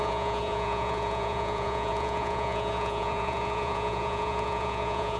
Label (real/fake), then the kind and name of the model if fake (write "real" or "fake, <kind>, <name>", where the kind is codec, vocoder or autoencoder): fake, vocoder, Vocos